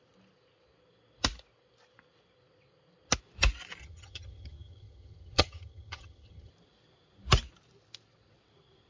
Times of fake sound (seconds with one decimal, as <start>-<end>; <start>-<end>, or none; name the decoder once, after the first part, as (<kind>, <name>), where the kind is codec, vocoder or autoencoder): 3.8-6.5 (vocoder, HiFi-GAN)